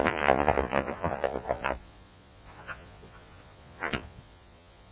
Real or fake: fake